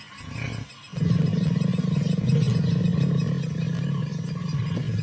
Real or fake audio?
real